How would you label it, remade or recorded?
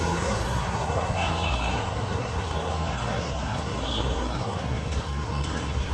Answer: remade